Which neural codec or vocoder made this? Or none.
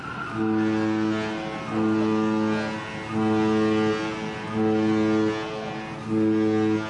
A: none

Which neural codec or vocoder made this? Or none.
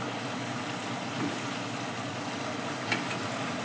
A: none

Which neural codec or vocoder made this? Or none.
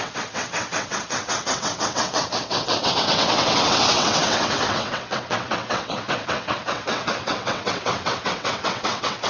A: vocoder, WaveNeXt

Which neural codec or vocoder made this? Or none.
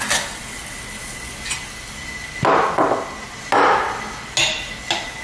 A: none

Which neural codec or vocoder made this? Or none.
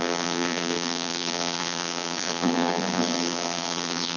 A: vocoder, BigVGAN v2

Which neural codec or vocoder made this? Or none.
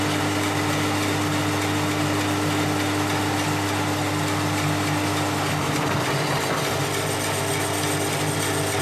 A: none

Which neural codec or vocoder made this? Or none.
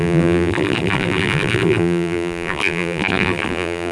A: vocoder, BigVGAN v2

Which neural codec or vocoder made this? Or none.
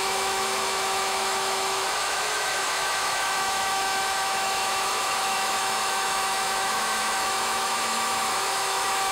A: autoencoder, DAC-VAE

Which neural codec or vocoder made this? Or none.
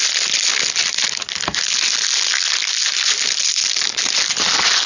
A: none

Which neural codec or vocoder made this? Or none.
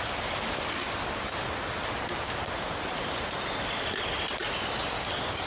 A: none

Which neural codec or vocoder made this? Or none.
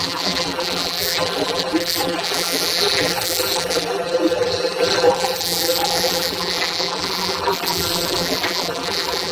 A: vocoder, BigVGAN v2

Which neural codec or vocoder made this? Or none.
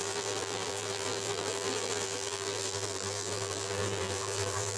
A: vocoder, BigVGAN v2